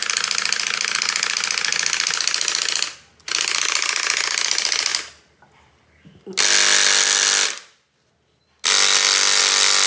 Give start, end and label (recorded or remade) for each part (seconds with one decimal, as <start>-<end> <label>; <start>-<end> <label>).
0.0-9.9 recorded